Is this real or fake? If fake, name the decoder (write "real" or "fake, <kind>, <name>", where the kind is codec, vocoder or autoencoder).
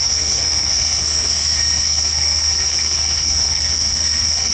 fake, codec, SNAC